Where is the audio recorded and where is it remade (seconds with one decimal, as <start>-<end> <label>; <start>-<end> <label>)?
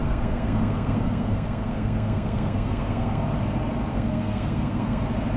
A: 0.0-3.2 remade; 3.2-3.9 recorded; 3.9-5.0 remade; 5.0-5.4 recorded